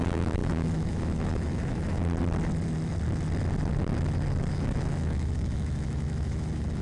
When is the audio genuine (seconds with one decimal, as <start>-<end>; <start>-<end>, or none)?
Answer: 2.0-4.5